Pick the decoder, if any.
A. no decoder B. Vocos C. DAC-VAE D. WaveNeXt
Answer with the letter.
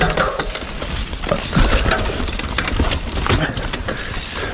A